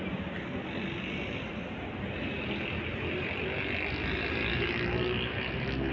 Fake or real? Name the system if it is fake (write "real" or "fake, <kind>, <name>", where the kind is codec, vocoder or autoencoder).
real